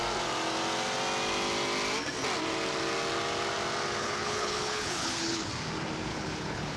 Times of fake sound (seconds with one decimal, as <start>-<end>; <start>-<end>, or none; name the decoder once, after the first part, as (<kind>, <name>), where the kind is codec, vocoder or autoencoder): 4.0-5.5 (codec, HILCodec); 6.1-6.8